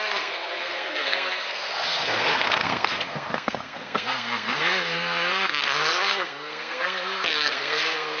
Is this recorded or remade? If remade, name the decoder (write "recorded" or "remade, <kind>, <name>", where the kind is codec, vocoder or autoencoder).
remade, codec, SNAC